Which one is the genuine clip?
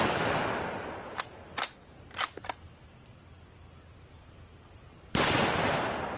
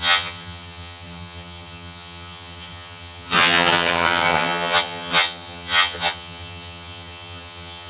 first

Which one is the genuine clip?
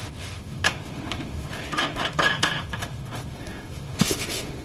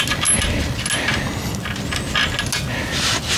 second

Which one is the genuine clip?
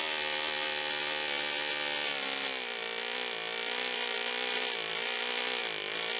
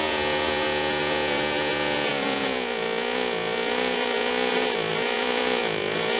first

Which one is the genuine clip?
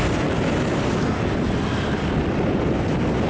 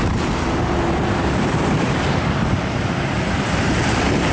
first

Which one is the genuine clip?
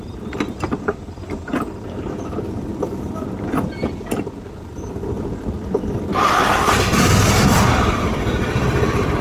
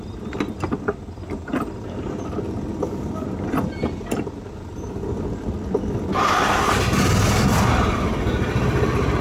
second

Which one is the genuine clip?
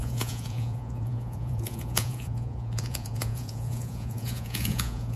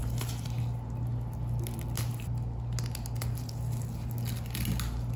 second